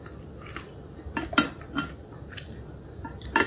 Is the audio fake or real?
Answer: fake